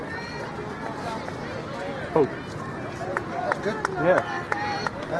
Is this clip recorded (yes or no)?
yes